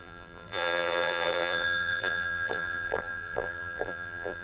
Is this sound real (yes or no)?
no